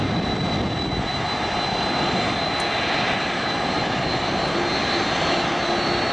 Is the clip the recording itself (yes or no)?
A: yes